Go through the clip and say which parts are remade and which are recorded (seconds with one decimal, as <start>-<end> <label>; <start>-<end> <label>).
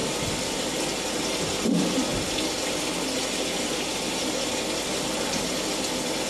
0.0-6.3 recorded